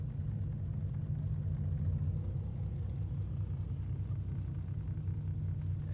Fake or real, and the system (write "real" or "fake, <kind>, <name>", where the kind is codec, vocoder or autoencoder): real